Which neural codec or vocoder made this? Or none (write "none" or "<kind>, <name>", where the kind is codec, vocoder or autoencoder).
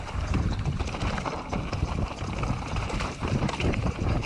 vocoder, BigVGAN v2